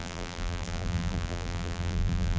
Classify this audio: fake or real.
fake